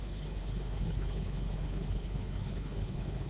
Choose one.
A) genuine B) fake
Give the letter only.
B